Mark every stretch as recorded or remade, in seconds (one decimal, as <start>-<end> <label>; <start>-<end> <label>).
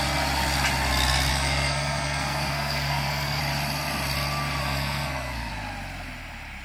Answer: 0.0-1.3 recorded; 1.3-3.4 remade; 3.4-4.6 recorded; 4.6-5.5 remade; 5.5-6.6 recorded